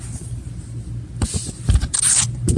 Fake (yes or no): no